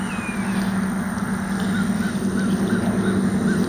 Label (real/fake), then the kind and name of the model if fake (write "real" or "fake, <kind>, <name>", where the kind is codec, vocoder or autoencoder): real